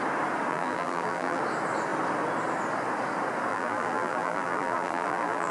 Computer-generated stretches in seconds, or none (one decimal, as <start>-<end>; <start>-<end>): 0.5-1.4; 3.5-5.5